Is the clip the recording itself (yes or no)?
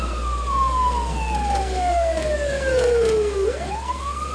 no